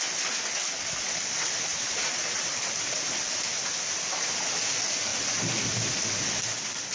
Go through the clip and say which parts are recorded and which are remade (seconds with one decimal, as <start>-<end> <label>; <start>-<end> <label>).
0.0-1.7 recorded; 1.7-3.1 remade; 3.1-6.9 recorded